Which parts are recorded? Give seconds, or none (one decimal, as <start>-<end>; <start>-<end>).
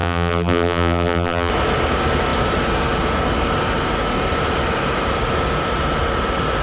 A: 1.5-6.6